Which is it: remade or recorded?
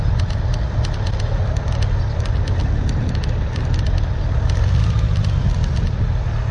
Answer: recorded